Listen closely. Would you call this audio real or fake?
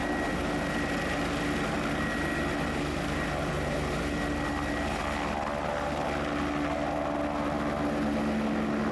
real